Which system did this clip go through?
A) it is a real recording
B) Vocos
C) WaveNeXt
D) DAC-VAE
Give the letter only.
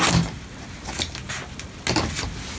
A